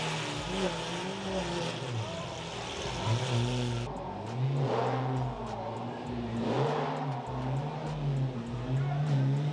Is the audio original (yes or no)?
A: yes